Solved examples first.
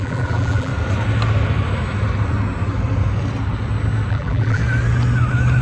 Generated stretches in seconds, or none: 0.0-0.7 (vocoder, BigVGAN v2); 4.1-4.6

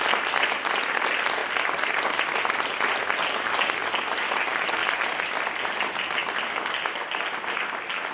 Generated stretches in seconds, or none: none

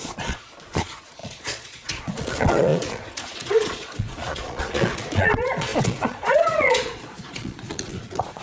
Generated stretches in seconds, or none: 0.0-8.4 (vocoder, Vocos)